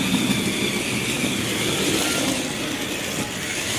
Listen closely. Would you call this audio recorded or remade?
recorded